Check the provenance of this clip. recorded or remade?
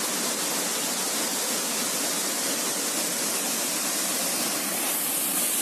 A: recorded